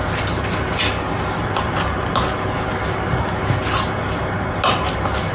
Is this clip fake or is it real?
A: real